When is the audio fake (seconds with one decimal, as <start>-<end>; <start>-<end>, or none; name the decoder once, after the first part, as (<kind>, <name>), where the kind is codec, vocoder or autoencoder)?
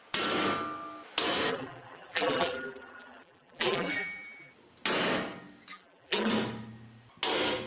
1.5-4.5 (vocoder, BigVGAN v2); 5.7-6.3